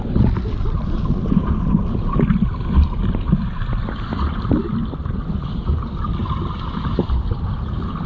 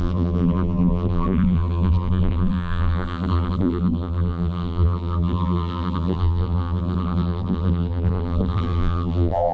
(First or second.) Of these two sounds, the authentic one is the first